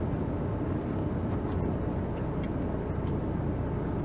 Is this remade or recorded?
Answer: recorded